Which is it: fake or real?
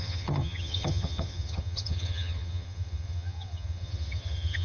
fake